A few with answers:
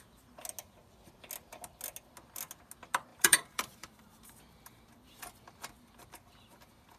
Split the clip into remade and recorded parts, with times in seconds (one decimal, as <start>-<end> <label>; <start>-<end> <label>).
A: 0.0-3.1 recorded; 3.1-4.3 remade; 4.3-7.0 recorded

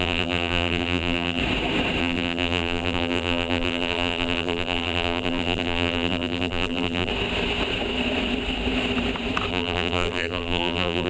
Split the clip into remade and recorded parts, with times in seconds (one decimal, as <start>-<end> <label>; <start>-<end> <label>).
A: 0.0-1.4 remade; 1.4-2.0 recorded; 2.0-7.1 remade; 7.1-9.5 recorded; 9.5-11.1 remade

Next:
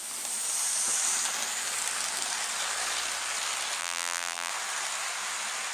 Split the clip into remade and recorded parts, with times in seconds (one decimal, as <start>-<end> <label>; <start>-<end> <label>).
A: 0.0-3.8 recorded; 3.8-4.5 remade; 4.5-5.7 recorded

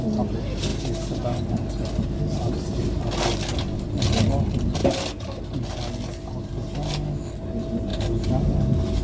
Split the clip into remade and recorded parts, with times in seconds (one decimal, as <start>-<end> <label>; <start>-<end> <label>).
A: 0.0-4.8 recorded; 4.8-5.4 remade; 5.4-9.0 recorded

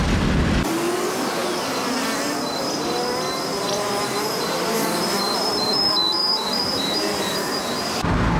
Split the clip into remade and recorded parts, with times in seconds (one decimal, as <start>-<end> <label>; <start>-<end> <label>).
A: 0.0-3.5 recorded; 3.5-8.4 remade

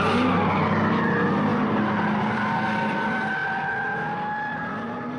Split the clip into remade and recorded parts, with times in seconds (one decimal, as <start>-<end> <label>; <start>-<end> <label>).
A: 0.0-5.2 recorded

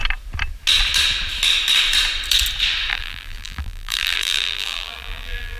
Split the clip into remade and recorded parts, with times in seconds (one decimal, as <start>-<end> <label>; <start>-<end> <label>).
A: 0.0-2.9 recorded; 2.9-5.6 remade

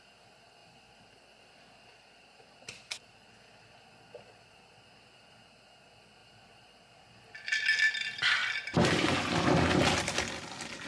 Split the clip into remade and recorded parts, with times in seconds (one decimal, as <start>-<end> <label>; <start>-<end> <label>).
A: 0.0-0.6 recorded; 0.6-3.1 remade; 3.1-6.2 recorded; 6.2-7.9 remade; 7.9-8.4 recorded; 8.4-9.1 remade; 9.1-10.9 recorded